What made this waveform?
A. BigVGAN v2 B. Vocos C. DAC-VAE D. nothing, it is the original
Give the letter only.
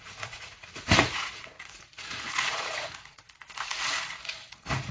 B